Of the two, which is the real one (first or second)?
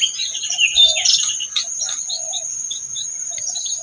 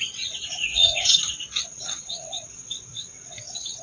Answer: first